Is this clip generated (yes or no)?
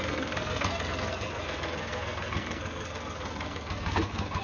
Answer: yes